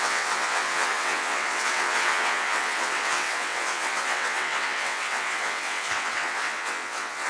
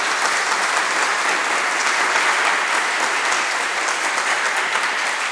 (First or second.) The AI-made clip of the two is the first